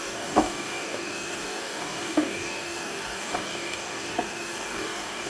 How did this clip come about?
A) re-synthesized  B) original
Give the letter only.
A